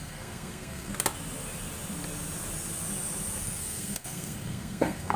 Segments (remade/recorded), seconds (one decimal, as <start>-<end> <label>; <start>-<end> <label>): 0.0-0.9 remade; 0.9-3.4 recorded; 3.4-5.2 remade